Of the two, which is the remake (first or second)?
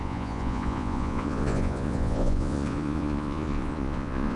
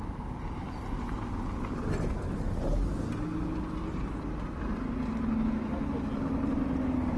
first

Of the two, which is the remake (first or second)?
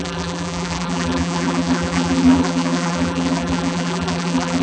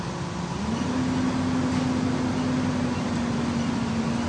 first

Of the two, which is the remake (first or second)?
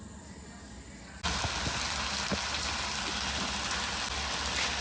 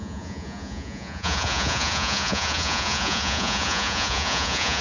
second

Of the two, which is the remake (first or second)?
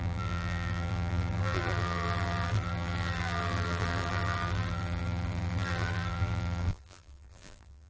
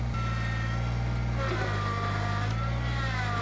first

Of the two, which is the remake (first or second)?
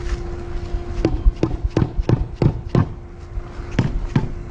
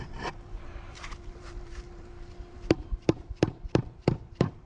second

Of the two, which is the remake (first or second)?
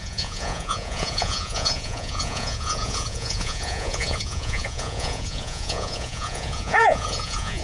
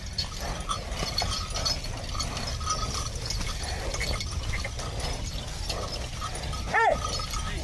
first